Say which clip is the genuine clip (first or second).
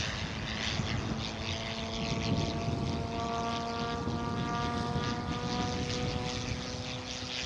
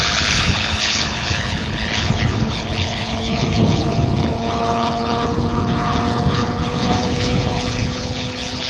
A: first